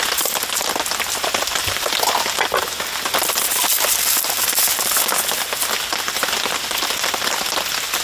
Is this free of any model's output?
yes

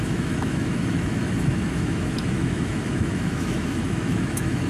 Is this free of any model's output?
no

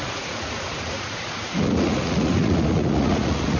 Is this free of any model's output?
no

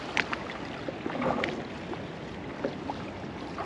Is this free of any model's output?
yes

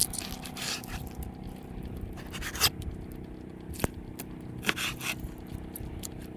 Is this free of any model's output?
yes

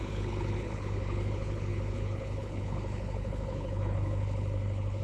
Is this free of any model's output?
no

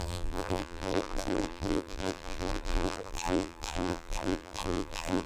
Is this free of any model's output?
no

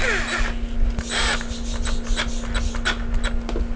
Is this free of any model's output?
yes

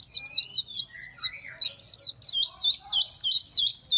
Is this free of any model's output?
yes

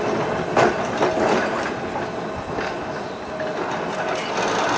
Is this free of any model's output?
yes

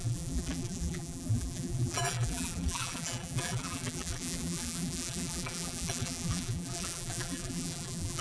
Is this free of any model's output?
no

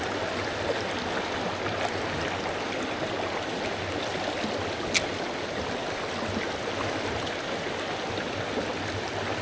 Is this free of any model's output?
yes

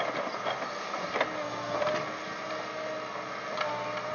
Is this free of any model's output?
yes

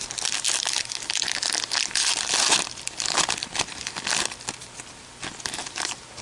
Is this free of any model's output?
yes